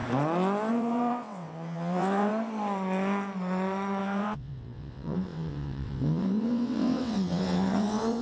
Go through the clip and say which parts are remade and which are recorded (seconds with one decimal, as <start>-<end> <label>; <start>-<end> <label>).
0.0-0.7 recorded; 0.7-2.3 remade; 2.3-4.0 recorded; 4.0-8.2 remade